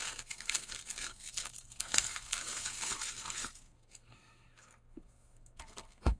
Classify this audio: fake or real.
fake